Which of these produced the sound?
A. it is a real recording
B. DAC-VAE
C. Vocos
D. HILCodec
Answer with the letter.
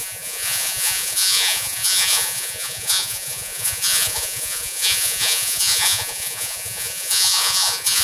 C